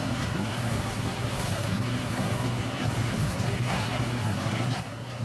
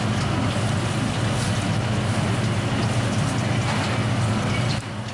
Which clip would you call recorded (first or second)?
second